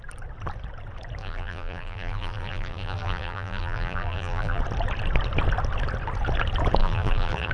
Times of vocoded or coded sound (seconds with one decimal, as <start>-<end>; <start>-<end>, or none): 1.2-4.6; 6.8-7.5